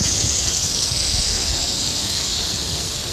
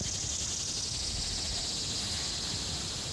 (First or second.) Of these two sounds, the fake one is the first